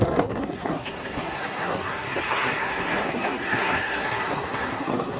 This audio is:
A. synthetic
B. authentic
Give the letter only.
A